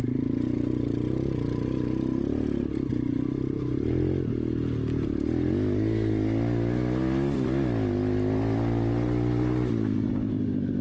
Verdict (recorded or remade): recorded